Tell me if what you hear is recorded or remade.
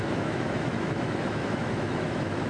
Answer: remade